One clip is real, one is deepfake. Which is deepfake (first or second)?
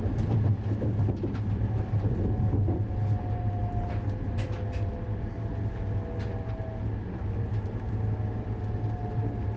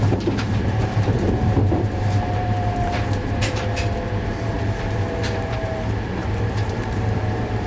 second